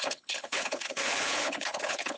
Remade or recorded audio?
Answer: remade